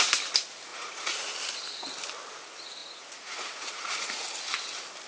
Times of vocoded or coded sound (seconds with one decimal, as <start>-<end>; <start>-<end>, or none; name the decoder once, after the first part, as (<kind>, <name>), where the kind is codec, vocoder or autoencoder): 0.7-1.3 (vocoder, Vocos); 2.8-4.2